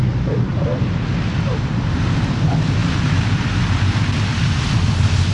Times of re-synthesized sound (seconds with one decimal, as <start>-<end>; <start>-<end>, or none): 0.5-1.1; 2.8-4.0